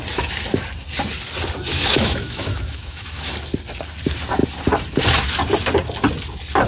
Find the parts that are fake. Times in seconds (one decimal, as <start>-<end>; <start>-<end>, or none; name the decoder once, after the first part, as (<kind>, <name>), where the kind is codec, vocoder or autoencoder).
1.7-3.3 (autoencoder, DAC-VAE)